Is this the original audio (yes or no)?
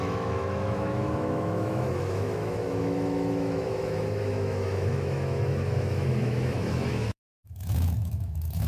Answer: no